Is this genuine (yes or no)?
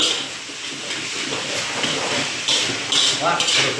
yes